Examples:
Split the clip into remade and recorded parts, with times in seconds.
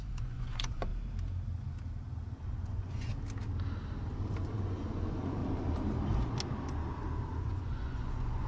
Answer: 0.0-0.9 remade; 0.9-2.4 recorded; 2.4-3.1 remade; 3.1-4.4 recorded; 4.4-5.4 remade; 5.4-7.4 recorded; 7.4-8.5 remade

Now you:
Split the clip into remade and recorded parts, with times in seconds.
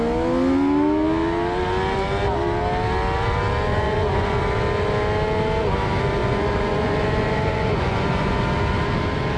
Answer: 0.0-3.7 recorded; 3.7-4.4 remade; 4.4-6.2 recorded; 6.2-8.4 remade; 8.4-9.4 recorded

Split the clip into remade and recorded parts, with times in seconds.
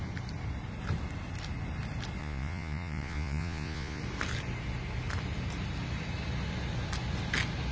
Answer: 0.0-2.2 recorded; 2.2-4.0 remade; 4.0-7.7 recorded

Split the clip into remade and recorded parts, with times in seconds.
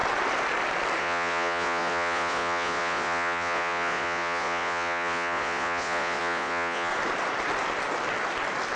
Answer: 0.0-1.0 recorded; 1.0-6.9 remade; 6.9-8.8 recorded